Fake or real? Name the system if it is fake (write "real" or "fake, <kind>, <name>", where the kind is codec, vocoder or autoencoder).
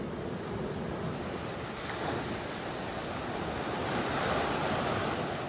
real